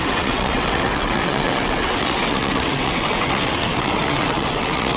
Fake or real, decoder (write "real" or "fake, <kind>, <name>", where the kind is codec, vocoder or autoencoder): fake, vocoder, WaveNeXt